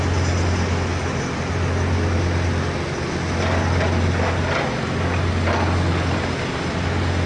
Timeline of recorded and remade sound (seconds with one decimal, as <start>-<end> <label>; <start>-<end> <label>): 0.0-7.3 recorded